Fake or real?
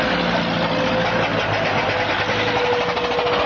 real